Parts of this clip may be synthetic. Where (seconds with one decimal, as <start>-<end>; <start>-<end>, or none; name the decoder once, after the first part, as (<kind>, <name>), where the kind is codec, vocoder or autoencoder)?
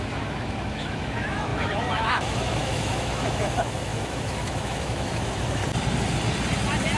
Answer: 0.0-5.6 (autoencoder, DAC-VAE)